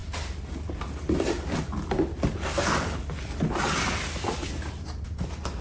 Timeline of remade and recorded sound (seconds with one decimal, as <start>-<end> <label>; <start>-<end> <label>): 0.0-5.6 recorded